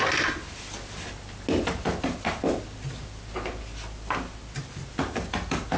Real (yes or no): yes